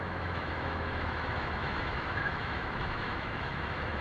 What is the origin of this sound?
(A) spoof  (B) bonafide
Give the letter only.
A